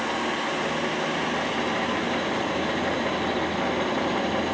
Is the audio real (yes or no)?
yes